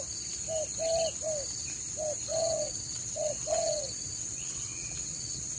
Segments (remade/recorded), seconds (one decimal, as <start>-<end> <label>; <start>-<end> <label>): 0.0-2.3 recorded; 2.3-5.6 remade